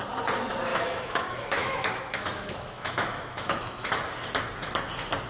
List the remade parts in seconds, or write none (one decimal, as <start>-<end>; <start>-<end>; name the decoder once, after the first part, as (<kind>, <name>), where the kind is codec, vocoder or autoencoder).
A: 0.7-3.9 (autoencoder, DAC-VAE)